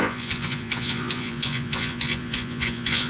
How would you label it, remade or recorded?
remade